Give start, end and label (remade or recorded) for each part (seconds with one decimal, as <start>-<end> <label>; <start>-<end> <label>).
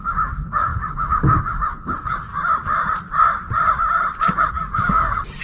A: 0.0-2.3 remade; 2.3-4.5 recorded; 4.5-5.4 remade